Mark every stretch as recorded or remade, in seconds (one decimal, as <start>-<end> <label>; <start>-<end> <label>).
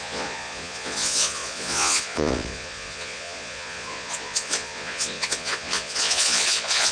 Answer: 0.0-6.9 remade